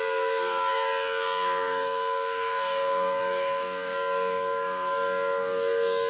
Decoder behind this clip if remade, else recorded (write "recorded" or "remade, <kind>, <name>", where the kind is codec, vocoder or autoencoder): remade, codec, DAC